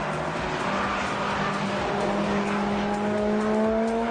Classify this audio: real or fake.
real